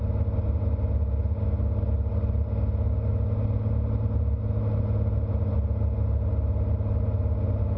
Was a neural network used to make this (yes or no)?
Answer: no